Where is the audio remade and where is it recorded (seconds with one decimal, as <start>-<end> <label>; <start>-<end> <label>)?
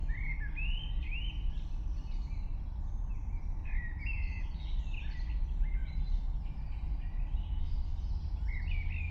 0.0-3.6 recorded; 3.6-4.6 remade; 4.6-9.1 recorded